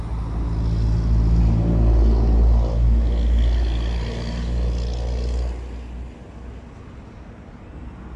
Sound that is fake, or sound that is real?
real